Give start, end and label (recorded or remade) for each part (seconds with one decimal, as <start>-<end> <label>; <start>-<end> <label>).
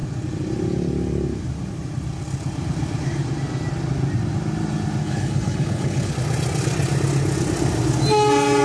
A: 0.0-5.0 recorded; 5.0-6.1 remade; 6.1-8.6 recorded